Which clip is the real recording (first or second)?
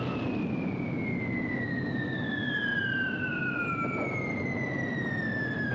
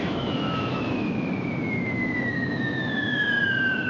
first